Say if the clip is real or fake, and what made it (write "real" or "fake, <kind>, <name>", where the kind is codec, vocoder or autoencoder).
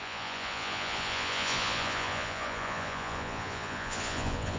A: fake, vocoder, Vocos